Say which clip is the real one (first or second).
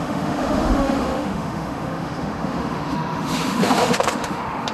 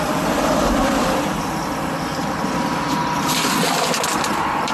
second